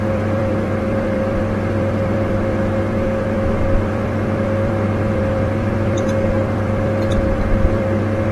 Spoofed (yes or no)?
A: yes